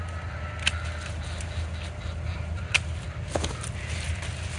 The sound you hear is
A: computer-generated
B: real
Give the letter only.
B